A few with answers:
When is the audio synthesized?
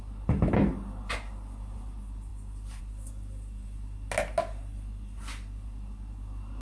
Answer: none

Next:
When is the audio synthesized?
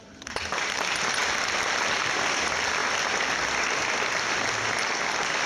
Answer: none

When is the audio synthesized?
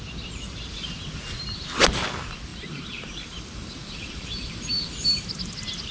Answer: 2.5-5.5 (vocoder, BigVGAN v2)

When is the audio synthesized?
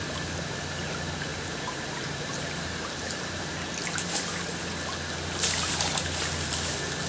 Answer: 1.3-3.4 (vocoder, BigVGAN v2)